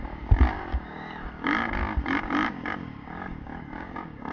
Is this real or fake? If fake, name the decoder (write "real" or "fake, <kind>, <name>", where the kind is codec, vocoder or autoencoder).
fake, codec, DAC